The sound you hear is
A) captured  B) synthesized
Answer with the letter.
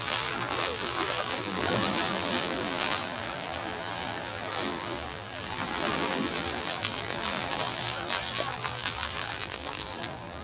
B